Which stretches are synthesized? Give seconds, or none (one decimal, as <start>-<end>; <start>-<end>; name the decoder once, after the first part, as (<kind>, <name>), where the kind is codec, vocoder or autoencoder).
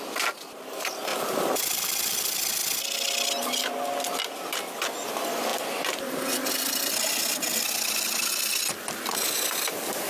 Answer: 1.1-1.8 (vocoder, BigVGAN v2); 5.5-6.5